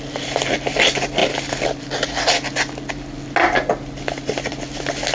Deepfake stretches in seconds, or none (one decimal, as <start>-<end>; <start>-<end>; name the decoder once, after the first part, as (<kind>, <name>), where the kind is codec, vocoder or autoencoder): none